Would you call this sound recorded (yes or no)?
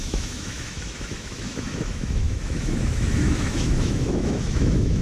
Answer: no